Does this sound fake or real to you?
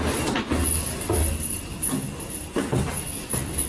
real